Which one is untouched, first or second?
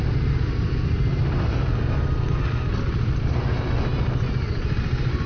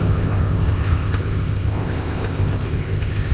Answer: first